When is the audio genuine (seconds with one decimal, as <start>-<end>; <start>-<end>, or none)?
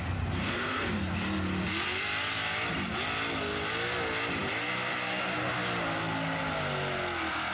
0.0-0.4; 0.9-7.5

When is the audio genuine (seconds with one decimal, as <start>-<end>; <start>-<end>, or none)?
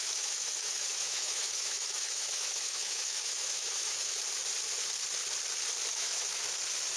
4.2-5.9; 6.4-7.0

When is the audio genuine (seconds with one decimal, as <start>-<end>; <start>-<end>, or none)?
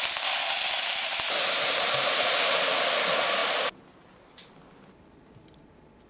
0.0-1.1; 2.6-3.4; 4.5-6.1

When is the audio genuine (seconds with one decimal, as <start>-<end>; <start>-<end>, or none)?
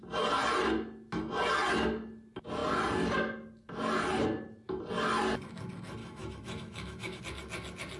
0.0-6.0; 7.2-8.0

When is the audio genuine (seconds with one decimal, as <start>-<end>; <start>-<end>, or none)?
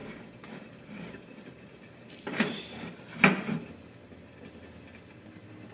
2.9-5.7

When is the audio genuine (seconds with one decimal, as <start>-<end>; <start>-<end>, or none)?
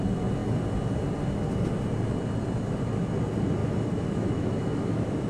0.0-3.6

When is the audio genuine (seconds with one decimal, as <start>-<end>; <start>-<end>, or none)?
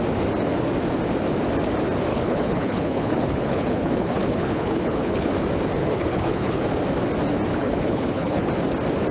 0.0-2.1; 5.3-5.8; 6.6-7.5; 8.5-9.1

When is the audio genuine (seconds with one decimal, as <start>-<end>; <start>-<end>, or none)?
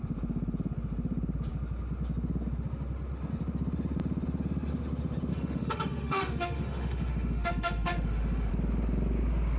0.0-5.3; 8.5-9.6